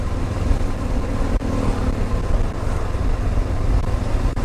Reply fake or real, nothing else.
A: real